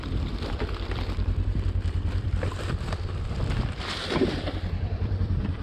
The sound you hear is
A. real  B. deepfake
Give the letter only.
B